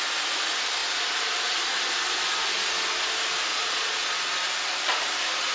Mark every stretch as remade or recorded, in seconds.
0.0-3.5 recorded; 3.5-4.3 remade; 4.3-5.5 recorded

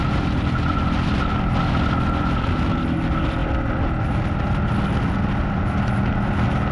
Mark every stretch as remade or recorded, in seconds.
0.0-6.7 recorded